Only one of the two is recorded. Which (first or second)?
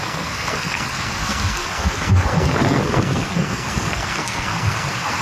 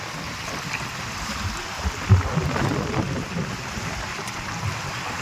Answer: second